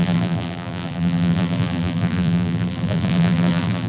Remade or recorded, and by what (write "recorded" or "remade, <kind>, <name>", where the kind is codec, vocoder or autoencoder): remade, vocoder, BigVGAN v2